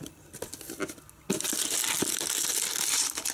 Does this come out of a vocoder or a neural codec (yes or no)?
no